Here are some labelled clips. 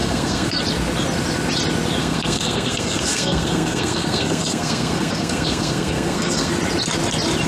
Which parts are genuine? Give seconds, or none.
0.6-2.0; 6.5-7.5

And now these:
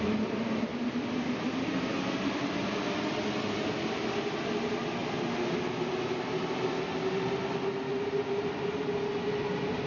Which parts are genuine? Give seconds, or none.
0.0-9.9

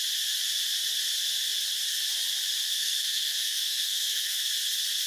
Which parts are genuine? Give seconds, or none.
0.0-2.7; 4.5-5.1

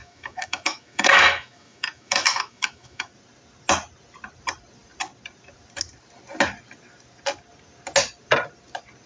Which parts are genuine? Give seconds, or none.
3.1-9.1

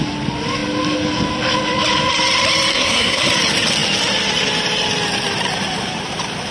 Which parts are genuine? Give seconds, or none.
0.0-2.7; 3.2-6.5

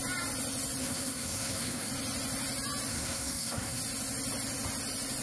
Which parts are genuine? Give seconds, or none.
0.0-0.8; 1.9-2.9; 3.8-5.2

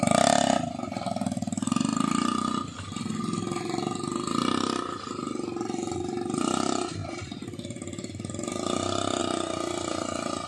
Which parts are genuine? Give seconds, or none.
0.0-10.5

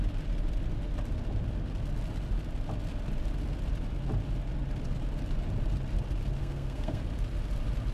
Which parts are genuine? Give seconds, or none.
0.0-6.4; 7.0-7.9